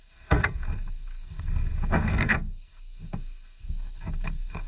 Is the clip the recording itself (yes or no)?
no